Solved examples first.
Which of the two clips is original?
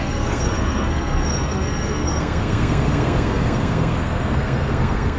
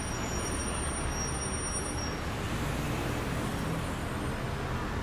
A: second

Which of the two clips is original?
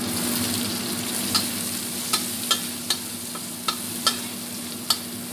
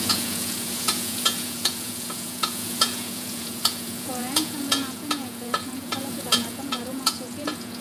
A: first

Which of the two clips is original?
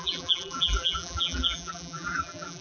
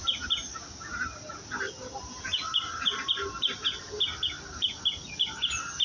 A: second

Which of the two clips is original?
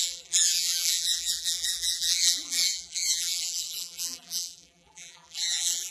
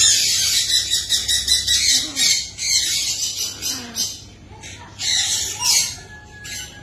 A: second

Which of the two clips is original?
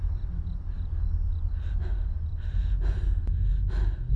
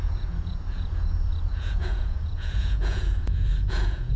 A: first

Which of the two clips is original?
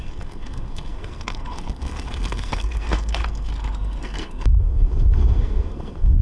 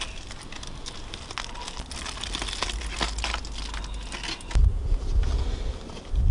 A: second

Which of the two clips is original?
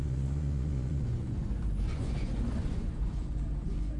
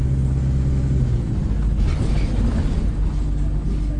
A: second